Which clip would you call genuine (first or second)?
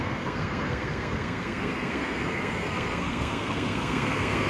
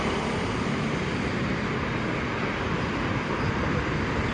second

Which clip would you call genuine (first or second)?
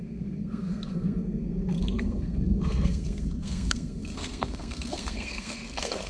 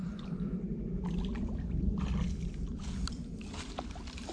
second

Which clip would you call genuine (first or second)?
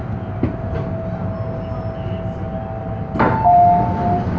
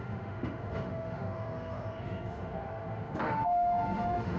first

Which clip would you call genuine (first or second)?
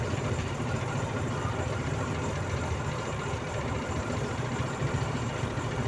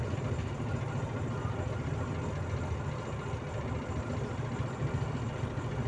second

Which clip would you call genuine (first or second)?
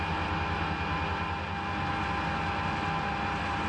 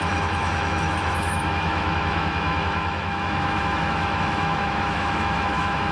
first